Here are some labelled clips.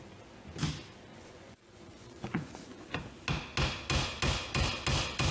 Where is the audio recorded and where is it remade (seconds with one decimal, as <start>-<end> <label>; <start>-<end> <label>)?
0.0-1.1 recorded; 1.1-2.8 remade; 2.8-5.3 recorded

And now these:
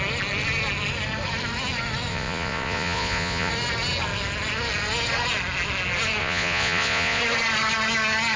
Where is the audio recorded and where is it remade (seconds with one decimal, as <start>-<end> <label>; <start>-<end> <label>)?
0.0-2.1 recorded; 2.1-3.5 remade; 3.5-6.2 recorded; 6.2-7.2 remade; 7.2-8.4 recorded

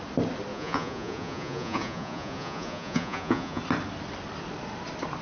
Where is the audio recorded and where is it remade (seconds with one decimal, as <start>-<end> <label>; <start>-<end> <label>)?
0.0-0.5 recorded; 0.5-3.6 remade; 3.6-5.2 recorded